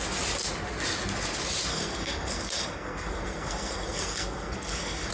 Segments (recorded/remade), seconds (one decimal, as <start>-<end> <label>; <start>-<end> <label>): 0.0-1.7 recorded; 1.7-5.1 remade

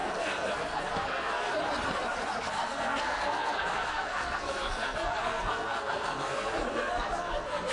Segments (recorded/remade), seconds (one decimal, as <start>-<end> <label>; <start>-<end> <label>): 0.0-1.5 remade; 1.5-2.4 recorded; 2.4-7.7 remade

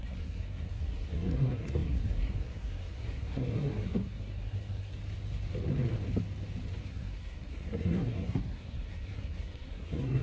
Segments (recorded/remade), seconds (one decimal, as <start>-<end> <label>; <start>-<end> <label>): 0.0-4.9 remade; 4.9-6.8 recorded; 6.8-10.2 remade

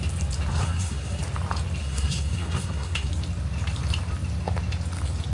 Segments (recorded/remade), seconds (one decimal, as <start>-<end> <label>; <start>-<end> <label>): 0.0-0.5 recorded; 0.5-1.2 remade; 1.2-1.8 recorded; 1.8-3.1 remade; 3.1-5.3 recorded